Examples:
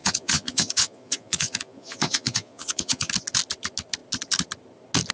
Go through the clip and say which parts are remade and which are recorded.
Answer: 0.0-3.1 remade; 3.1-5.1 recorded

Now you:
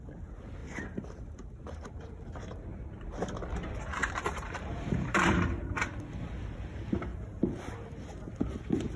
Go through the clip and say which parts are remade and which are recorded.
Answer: 0.0-0.6 recorded; 0.6-2.2 remade; 2.2-4.0 recorded; 4.0-5.6 remade; 5.6-7.1 recorded; 7.1-7.6 remade; 7.6-9.0 recorded

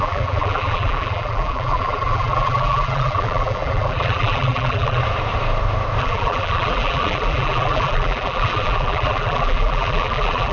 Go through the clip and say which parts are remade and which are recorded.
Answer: 0.0-5.0 remade; 5.0-6.0 recorded; 6.0-10.5 remade

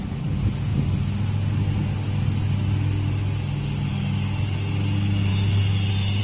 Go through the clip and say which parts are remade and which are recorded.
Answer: 0.0-6.2 recorded

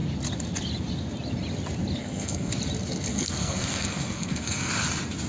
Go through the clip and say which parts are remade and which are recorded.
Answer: 0.0-2.0 recorded; 2.0-2.5 remade; 2.5-3.1 recorded; 3.1-4.7 remade; 4.7-5.3 recorded

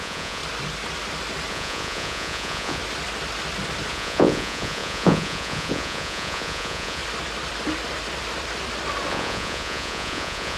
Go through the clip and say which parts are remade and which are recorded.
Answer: 0.0-0.4 remade; 0.4-1.5 recorded; 1.5-2.8 remade; 2.8-3.9 recorded; 3.9-7.0 remade; 7.0-9.1 recorded; 9.1-10.6 remade

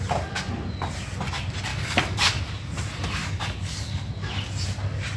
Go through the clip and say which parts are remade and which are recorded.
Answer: 0.0-1.7 recorded; 1.7-2.4 remade; 2.4-3.2 recorded; 3.2-4.1 remade; 4.1-5.2 recorded

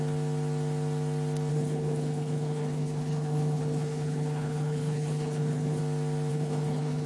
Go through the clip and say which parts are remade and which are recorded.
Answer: 0.0-1.5 recorded; 1.5-5.8 remade; 5.8-6.3 recorded; 6.3-7.1 remade